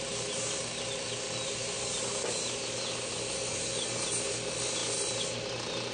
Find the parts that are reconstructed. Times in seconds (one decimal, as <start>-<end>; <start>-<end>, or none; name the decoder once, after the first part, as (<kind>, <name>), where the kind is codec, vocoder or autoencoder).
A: none